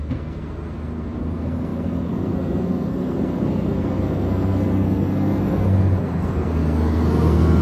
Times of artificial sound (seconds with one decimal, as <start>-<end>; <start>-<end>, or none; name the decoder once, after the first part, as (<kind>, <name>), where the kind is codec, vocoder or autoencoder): 0.0-7.6 (codec, SNAC)